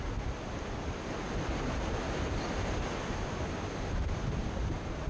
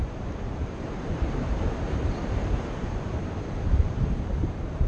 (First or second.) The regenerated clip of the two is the second